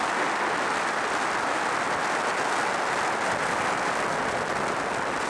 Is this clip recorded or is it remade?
recorded